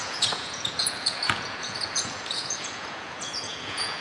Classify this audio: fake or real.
fake